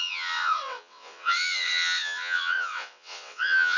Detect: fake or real fake